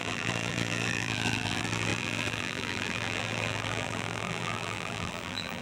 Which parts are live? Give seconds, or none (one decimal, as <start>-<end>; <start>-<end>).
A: none